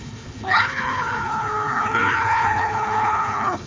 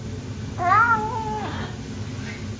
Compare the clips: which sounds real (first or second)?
second